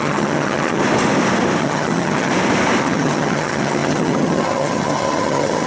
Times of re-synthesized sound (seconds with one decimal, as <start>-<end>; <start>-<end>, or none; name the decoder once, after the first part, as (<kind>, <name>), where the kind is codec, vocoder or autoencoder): 0.0-0.8 (vocoder, HiFi-GAN); 1.6-2.3; 2.8-5.7